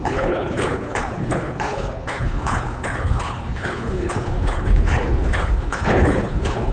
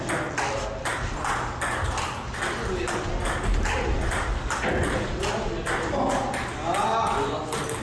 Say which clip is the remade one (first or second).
first